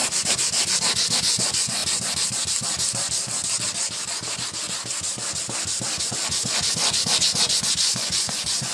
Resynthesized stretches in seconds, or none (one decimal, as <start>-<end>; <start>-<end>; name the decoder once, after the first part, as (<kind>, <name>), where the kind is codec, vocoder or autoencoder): 1.2-1.8 (vocoder, Vocos); 6.0-8.7